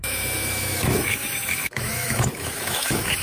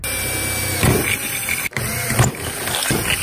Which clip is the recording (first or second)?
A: second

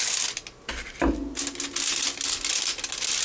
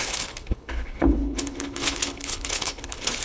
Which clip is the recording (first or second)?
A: first